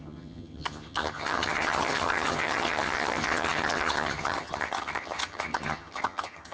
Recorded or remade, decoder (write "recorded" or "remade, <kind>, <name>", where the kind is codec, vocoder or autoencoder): remade, vocoder, HiFi-GAN